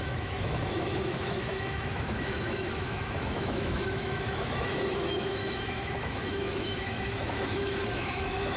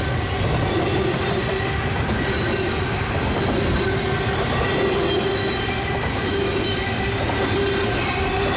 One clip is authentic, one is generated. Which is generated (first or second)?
first